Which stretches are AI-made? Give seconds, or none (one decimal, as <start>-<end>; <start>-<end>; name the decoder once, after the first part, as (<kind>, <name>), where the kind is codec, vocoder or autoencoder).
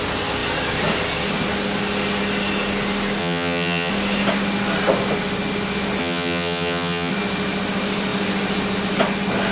3.2-3.9 (vocoder, HiFi-GAN); 6.0-7.1